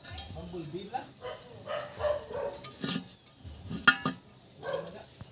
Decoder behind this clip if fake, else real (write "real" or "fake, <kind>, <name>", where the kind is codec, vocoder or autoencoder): real